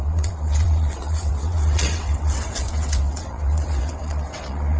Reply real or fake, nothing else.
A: fake